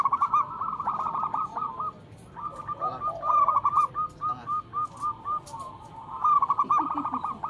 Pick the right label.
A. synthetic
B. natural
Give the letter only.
B